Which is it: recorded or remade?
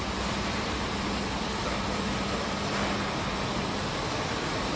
remade